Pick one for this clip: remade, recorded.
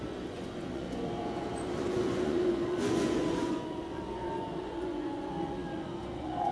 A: remade